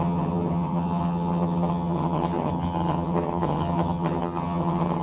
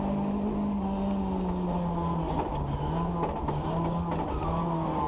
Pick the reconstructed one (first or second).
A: first